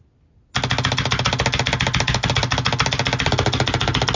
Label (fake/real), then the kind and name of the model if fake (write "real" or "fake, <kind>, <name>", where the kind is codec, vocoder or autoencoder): real